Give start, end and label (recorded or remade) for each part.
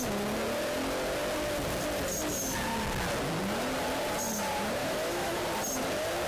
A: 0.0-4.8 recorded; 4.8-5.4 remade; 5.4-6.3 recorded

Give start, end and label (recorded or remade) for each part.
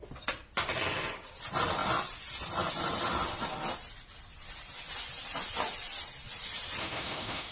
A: 0.0-6.8 recorded; 6.8-7.5 remade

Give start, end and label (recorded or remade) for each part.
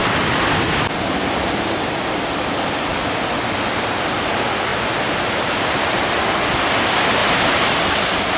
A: 0.0-4.7 recorded; 4.7-6.4 remade; 6.4-7.2 recorded; 7.2-7.8 remade; 7.8-8.4 recorded